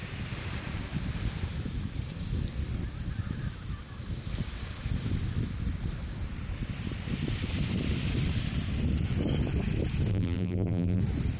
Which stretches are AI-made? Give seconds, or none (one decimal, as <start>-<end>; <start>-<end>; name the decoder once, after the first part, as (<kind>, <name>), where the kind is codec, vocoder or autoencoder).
10.1-11.0 (vocoder, BigVGAN v2)